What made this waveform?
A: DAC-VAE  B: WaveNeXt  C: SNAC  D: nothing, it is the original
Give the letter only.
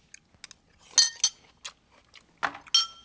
D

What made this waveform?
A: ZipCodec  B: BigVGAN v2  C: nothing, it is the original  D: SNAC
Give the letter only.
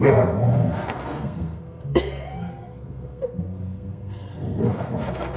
D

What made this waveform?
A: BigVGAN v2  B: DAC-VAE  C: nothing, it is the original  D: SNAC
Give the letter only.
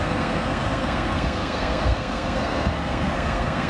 D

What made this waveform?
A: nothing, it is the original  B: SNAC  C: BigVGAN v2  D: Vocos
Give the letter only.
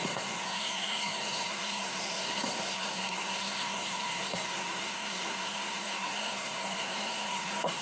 B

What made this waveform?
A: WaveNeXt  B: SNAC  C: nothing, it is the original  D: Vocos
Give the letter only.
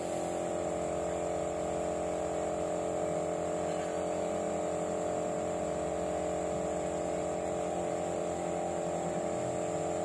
C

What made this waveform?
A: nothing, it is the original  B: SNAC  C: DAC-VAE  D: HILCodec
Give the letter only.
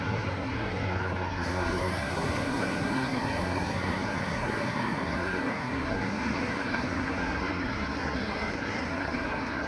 B